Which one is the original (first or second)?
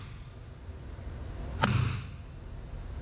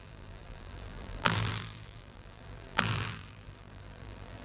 first